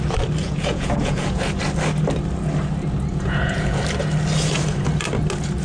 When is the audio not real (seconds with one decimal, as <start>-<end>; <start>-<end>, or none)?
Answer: 0.4-1.4; 3.1-3.8